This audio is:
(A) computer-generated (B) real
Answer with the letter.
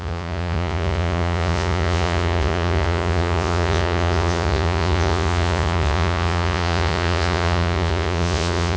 A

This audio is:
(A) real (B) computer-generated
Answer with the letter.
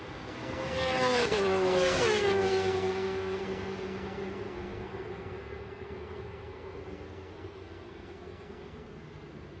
B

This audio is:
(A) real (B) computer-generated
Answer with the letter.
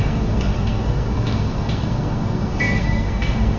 B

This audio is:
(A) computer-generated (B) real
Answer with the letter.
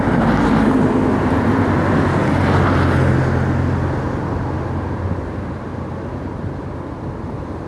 B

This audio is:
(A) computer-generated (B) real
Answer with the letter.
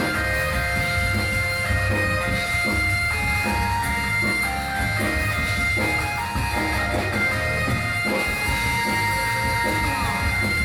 B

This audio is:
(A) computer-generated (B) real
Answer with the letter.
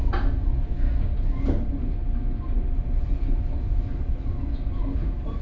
B